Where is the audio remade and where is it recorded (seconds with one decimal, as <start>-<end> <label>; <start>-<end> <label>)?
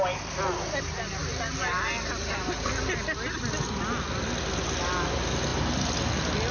0.0-6.5 recorded